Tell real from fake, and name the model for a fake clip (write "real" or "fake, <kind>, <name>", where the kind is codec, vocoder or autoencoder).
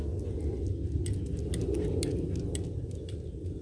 real